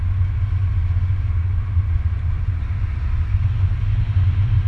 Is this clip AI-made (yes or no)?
no